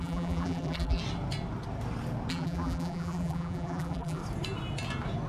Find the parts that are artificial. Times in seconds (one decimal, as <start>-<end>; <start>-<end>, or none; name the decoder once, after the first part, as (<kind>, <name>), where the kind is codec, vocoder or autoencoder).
0.0-1.0 (vocoder, BigVGAN v2); 2.3-4.2